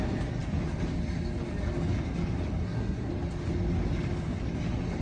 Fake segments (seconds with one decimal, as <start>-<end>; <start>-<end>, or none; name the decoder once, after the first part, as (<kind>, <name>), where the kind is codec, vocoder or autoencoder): 2.6-3.1 (codec, SNAC)